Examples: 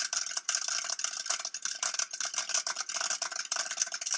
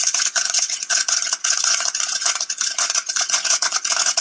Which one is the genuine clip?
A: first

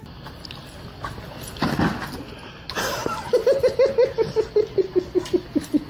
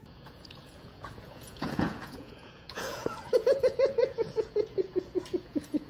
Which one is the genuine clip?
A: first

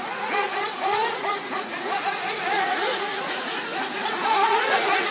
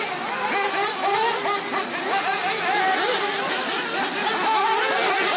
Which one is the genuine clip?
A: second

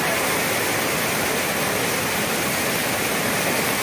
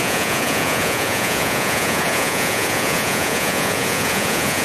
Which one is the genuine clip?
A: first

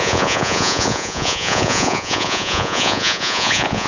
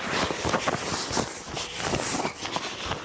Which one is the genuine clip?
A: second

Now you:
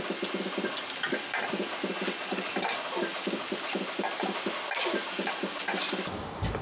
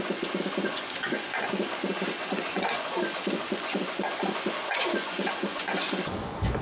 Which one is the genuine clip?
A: first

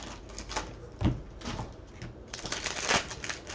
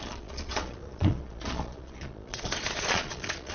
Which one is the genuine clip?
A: first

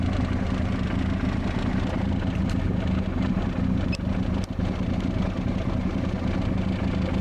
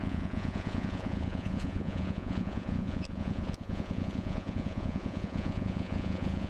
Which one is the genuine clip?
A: first